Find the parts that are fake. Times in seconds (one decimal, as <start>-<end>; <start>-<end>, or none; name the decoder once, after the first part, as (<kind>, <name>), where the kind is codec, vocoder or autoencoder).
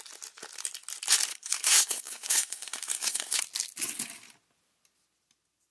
1.3-3.4 (codec, SNAC)